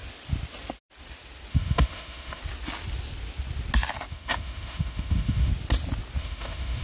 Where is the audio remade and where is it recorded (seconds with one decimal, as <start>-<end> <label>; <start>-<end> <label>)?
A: 0.0-1.5 recorded; 1.5-2.4 remade; 2.4-4.1 recorded; 4.1-5.5 remade; 5.5-6.2 recorded; 6.2-6.8 remade